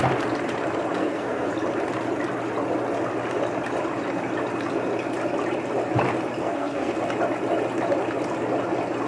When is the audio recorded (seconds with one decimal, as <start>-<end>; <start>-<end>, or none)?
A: 0.0-1.0; 1.5-6.4; 6.9-9.1